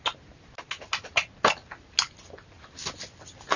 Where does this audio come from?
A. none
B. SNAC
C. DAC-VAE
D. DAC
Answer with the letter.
A